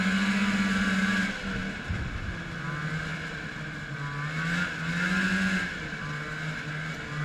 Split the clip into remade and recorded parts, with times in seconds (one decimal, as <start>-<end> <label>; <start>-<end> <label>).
0.0-7.2 recorded

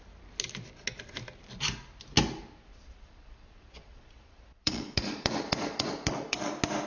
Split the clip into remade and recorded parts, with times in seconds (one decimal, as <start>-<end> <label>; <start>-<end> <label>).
0.0-2.7 recorded; 2.7-6.5 remade; 6.5-6.9 recorded

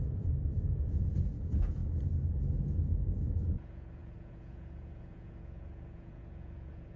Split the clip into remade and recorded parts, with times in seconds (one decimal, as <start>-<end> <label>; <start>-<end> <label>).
0.0-1.8 remade; 1.8-2.6 recorded; 2.6-7.0 remade

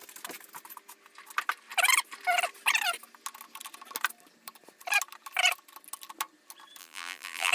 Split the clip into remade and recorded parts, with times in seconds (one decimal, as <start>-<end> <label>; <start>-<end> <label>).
0.0-6.8 recorded; 6.8-7.5 remade

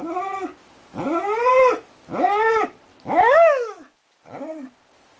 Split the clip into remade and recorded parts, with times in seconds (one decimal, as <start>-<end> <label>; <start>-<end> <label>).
0.0-2.9 recorded; 2.9-4.2 remade; 4.2-5.2 recorded

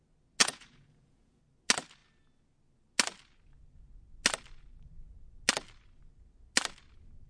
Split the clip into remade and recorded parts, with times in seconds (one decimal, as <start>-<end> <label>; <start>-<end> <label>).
0.0-0.4 recorded; 0.4-1.4 remade; 1.4-7.3 recorded

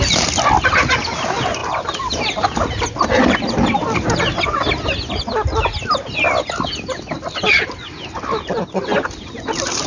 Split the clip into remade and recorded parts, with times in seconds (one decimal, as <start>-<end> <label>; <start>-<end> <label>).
0.0-9.9 recorded